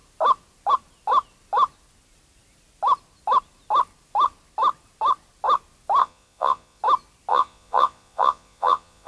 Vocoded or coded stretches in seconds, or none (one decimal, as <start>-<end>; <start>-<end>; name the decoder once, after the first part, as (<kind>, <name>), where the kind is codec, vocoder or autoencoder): 6.0-6.8 (vocoder, Vocos); 7.3-9.1